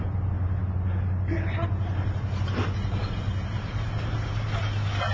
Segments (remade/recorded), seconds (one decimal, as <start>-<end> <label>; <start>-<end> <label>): 0.0-5.1 recorded